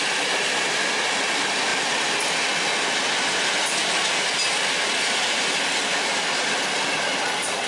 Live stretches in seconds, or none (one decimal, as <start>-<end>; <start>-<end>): 0.0-7.7